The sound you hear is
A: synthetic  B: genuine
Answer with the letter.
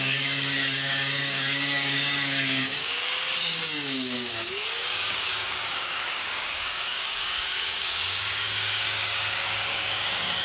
A